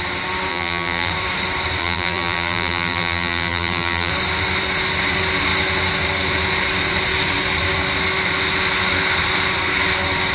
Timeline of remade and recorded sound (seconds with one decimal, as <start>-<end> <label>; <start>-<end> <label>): 0.0-0.5 recorded; 0.5-1.1 remade; 1.1-1.8 recorded; 1.8-4.1 remade; 4.1-10.3 recorded